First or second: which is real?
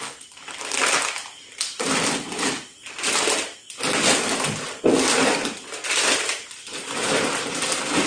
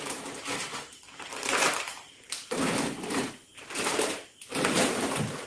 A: first